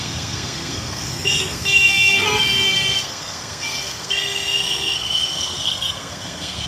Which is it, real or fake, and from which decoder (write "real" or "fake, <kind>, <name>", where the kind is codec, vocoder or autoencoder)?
fake, codec, SNAC